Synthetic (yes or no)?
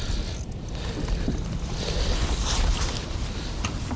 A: no